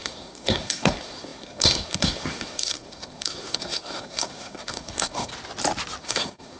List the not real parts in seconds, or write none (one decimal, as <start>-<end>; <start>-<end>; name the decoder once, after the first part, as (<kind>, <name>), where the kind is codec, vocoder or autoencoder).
0.0-5.3 (codec, SNAC); 6.0-6.6

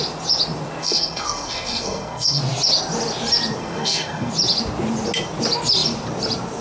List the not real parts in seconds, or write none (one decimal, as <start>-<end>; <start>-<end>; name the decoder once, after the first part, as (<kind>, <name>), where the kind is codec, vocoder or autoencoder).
0.8-2.4 (codec, SNAC); 3.6-4.3

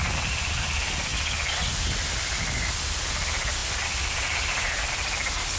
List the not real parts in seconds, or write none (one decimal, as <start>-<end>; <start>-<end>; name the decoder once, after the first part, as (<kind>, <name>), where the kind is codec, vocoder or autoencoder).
none

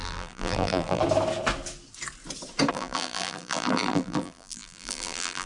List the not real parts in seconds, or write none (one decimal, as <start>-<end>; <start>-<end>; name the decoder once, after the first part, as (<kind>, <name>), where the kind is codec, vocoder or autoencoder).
0.0-1.0 (vocoder, BigVGAN v2); 2.7-5.5

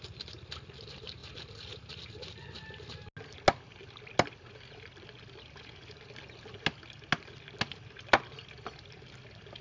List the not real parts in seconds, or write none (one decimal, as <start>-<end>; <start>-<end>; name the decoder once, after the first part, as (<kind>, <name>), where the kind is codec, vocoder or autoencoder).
none

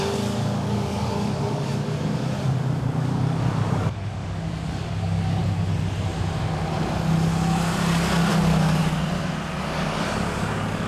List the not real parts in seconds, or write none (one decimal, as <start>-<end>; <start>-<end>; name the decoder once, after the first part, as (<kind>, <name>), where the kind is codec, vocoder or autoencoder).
0.0-5.4 (codec, DAC); 8.3-8.8; 9.6-10.9

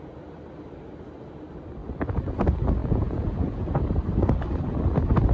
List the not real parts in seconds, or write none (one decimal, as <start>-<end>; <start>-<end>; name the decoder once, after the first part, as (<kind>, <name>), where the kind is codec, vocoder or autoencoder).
2.8-3.7 (vocoder, Vocos)

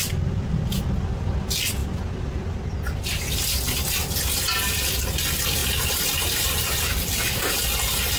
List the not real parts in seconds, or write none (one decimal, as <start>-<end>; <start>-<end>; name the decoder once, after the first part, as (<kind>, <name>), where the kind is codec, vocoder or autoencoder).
1.8-2.6 (vocoder, BigVGAN v2); 5.6-7.6